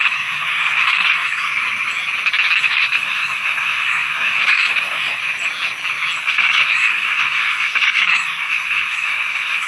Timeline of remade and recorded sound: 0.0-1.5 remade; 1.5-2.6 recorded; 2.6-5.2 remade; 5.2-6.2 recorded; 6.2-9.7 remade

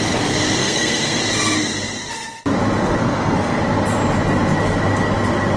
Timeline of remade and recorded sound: 0.0-0.6 recorded; 0.6-1.2 remade; 1.2-3.0 recorded; 3.0-3.6 remade; 3.6-5.6 recorded

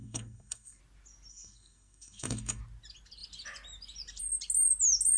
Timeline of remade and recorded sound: 0.0-0.8 remade; 0.8-1.3 recorded; 1.3-2.6 remade; 2.6-5.2 recorded

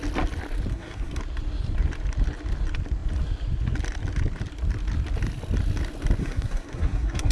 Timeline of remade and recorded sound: 0.0-0.7 recorded; 0.7-1.2 remade; 1.2-6.2 recorded; 6.2-7.3 remade

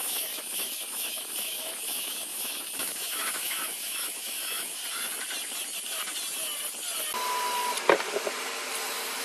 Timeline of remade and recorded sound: 0.0-4.8 remade; 4.8-9.2 recorded

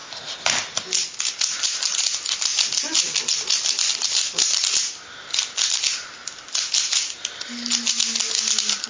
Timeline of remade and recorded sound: 0.0-8.9 recorded

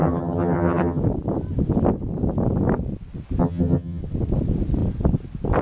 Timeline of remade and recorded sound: 0.0-1.0 remade; 1.0-3.4 recorded; 3.4-4.0 remade; 4.0-5.6 recorded